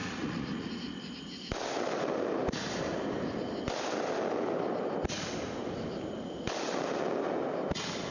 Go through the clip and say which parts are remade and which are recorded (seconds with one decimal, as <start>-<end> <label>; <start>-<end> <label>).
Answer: 0.0-0.7 remade; 0.7-8.1 recorded